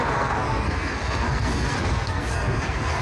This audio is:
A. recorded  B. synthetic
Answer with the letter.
B